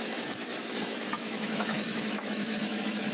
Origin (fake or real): fake